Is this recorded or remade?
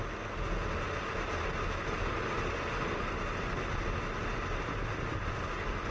recorded